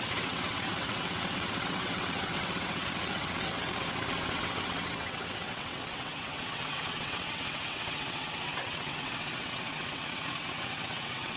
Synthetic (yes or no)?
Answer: yes